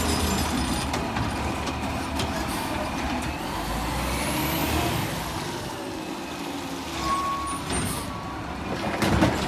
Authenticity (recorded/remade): recorded